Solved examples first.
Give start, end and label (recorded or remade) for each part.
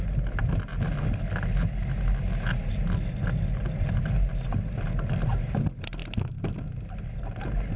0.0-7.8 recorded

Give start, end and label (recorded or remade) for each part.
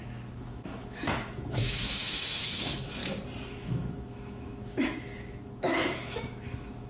0.0-3.0 remade; 3.0-3.5 recorded; 3.5-6.9 remade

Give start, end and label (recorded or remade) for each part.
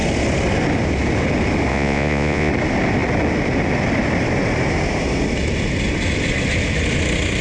0.0-1.7 recorded; 1.7-2.5 remade; 2.5-7.4 recorded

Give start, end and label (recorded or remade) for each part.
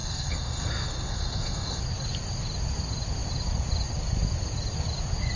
0.0-1.8 remade; 1.8-5.4 recorded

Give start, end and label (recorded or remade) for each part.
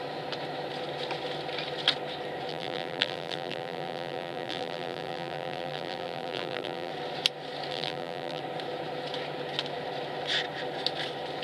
0.0-2.5 recorded; 2.5-6.9 remade; 6.9-7.7 recorded; 7.7-8.4 remade; 8.4-11.4 recorded